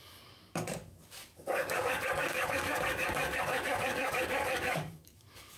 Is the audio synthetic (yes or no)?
yes